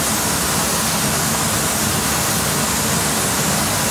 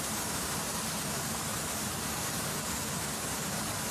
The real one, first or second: first